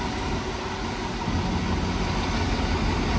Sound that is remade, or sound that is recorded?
recorded